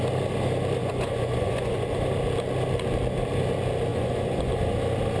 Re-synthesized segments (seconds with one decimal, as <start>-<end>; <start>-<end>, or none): 0.8-1.9; 3.9-4.5

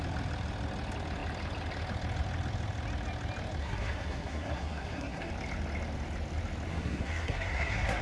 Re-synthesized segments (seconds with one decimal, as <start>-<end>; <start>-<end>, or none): 3.6-5.3; 6.7-8.0